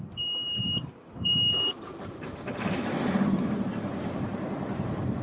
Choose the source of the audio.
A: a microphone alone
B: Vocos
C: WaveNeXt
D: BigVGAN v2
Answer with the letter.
D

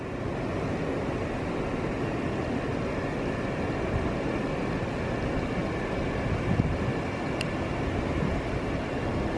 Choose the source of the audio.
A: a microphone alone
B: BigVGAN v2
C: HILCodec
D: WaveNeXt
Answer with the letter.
A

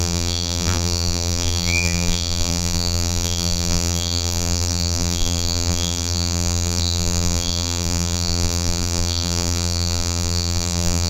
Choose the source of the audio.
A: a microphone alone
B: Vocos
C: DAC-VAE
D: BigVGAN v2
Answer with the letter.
D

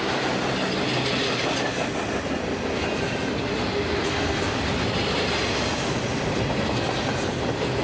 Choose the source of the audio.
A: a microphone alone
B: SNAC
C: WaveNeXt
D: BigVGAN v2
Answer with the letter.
A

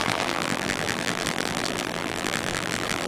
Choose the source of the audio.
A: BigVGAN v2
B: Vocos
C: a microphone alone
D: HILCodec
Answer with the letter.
A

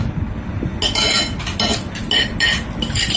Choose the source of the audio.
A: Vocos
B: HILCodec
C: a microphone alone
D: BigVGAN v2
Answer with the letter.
C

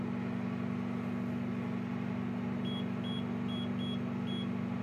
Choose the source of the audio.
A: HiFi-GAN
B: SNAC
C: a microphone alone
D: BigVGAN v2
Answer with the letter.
C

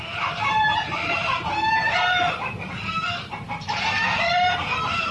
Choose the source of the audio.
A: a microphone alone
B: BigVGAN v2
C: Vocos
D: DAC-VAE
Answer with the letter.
B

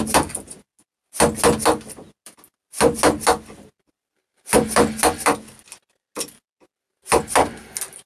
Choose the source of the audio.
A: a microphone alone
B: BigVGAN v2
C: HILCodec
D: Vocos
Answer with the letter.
A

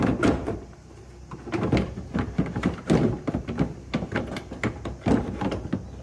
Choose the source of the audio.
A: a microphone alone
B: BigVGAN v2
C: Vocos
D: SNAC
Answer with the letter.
A